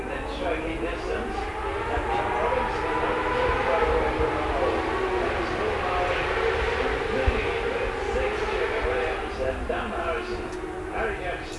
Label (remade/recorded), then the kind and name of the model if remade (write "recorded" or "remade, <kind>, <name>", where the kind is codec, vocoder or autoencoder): recorded